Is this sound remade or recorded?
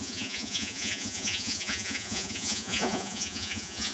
remade